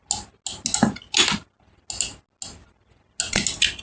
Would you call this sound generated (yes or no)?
no